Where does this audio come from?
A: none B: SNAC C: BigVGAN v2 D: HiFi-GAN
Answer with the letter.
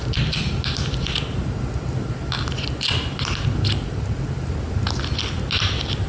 A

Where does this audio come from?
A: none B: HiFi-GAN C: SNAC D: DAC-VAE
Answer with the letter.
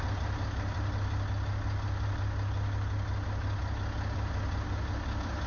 A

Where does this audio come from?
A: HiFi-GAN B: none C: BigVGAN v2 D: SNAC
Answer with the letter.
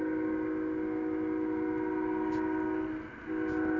B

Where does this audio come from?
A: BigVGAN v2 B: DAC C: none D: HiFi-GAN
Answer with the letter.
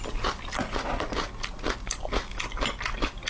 C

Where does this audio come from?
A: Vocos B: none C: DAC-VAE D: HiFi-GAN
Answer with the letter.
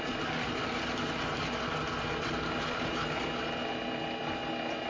B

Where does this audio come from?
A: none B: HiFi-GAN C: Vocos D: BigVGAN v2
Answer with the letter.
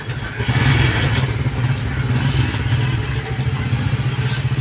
A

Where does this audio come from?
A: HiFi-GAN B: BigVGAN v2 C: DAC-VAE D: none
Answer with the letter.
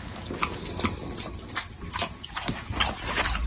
D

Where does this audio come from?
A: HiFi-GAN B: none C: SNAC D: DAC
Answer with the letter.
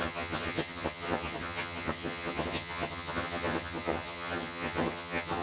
A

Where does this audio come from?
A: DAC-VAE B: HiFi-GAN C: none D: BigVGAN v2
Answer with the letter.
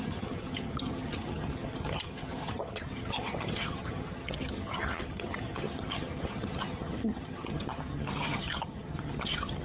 B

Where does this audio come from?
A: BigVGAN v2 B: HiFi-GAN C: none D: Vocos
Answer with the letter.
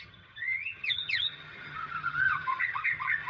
B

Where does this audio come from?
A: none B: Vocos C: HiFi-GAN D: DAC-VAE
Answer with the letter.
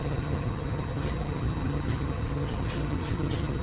C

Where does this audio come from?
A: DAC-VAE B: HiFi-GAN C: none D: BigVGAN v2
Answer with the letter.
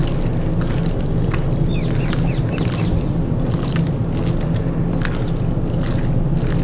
C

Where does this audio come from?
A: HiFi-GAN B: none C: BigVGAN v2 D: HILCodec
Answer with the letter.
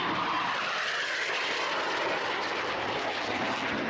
B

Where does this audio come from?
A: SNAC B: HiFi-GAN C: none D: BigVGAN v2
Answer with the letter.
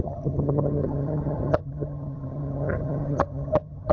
B